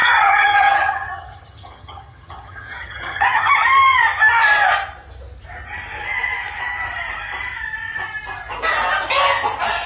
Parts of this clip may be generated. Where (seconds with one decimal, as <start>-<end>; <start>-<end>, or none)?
0.0-3.5